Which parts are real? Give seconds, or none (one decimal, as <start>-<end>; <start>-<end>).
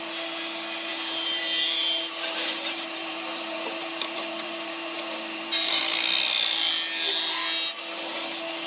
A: 0.0-0.9; 5.8-8.7